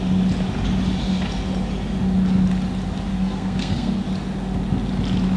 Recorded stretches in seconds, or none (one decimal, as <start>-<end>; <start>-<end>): 0.0-3.1; 4.0-5.4